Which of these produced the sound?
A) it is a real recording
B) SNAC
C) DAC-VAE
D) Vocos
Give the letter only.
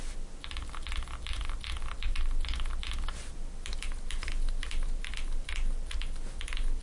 A